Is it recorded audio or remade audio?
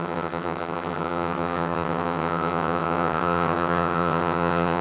remade